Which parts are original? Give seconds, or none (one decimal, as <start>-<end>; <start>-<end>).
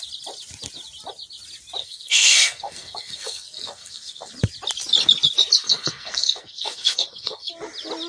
0.0-1.8; 4.3-5.6; 7.5-8.1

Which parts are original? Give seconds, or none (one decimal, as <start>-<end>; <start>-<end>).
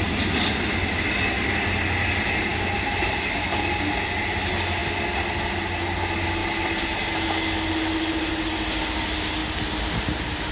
0.0-10.5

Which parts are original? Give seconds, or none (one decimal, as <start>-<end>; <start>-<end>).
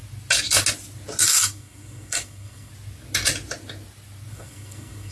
0.0-1.2; 2.7-4.3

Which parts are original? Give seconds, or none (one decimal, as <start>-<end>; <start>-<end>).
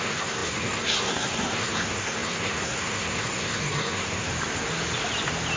4.3-5.6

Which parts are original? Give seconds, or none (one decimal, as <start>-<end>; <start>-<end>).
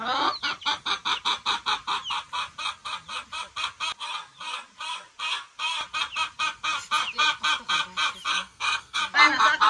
0.0-8.3; 9.0-9.7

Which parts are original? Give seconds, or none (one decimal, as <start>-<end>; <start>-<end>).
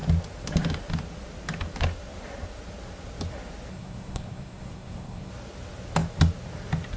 0.0-3.7; 5.3-7.0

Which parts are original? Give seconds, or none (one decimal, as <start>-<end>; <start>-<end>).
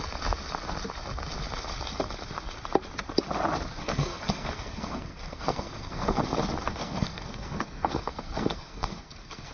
0.0-3.8; 6.2-6.7